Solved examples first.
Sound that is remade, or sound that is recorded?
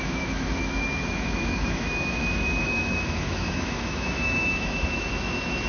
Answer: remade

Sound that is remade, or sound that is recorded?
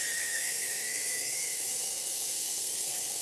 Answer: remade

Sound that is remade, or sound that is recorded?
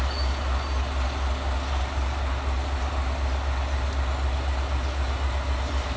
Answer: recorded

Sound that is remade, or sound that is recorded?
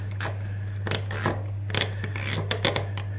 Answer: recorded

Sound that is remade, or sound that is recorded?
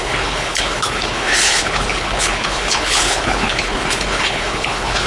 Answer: remade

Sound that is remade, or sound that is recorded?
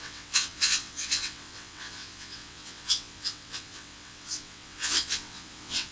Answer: remade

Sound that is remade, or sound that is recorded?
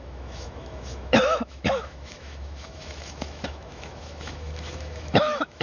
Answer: remade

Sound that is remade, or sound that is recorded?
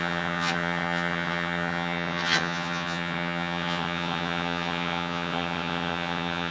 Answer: remade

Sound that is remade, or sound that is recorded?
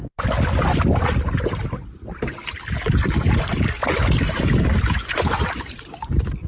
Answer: recorded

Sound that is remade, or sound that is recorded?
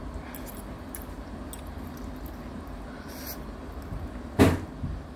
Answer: recorded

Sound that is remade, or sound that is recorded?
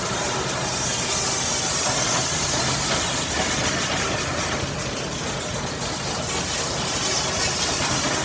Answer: recorded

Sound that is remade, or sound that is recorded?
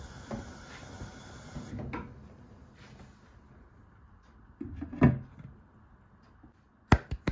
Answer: recorded